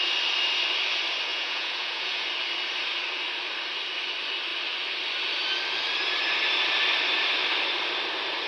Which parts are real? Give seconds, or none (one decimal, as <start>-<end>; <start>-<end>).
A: 0.0-1.3; 2.3-8.5